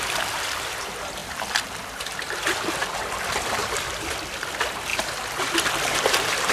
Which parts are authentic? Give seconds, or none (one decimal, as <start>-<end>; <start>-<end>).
none